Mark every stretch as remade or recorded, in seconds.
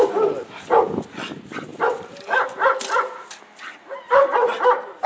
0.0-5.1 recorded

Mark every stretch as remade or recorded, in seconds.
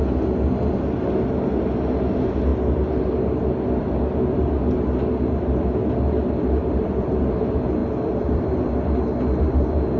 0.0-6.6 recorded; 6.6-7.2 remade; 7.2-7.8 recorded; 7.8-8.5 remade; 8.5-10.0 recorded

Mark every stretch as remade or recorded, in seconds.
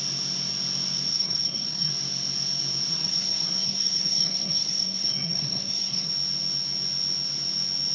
0.0-1.1 recorded; 1.1-1.9 remade; 1.9-2.9 recorded; 2.9-6.1 remade; 6.1-7.9 recorded